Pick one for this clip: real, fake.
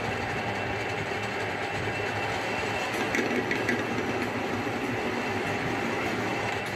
real